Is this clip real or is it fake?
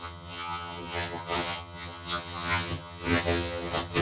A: fake